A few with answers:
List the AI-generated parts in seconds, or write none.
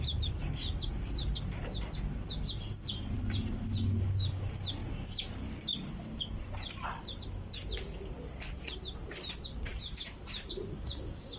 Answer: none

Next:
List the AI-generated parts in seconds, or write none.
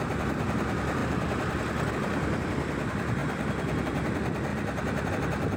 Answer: none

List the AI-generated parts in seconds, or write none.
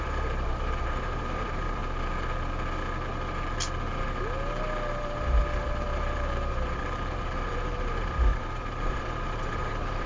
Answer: 0.0-1.8; 4.9-10.1